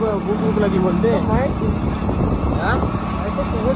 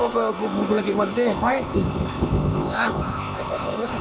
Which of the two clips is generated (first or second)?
second